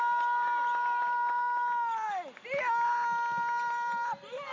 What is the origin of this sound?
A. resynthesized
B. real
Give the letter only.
B